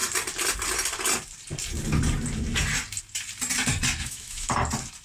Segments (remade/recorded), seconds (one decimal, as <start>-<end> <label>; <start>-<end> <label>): 0.0-4.0 recorded; 4.0-4.5 remade; 4.5-5.0 recorded